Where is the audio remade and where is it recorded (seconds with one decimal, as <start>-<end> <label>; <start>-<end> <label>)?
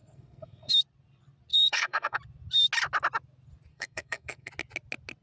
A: 0.0-0.7 remade; 0.7-1.5 recorded; 1.5-2.2 remade; 2.2-3.7 recorded; 3.7-4.5 remade; 4.5-5.2 recorded